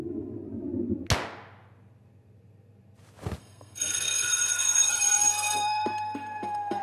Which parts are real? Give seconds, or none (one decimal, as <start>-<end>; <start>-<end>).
0.0-3.4